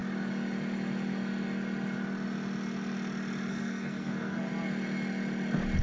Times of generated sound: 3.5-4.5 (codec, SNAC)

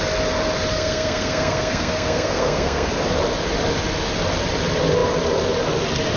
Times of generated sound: 0.7-2.9 (codec, SNAC)

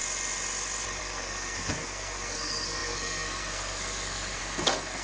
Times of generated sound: 1.0-5.0 (codec, SNAC)

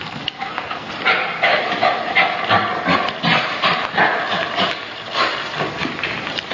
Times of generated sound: 0.0-0.9 (codec, SNAC)